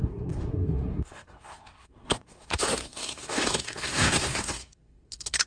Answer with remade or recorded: remade